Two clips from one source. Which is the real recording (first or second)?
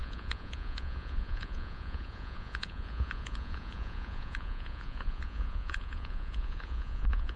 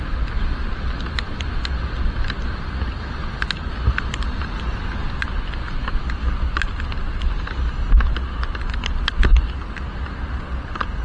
second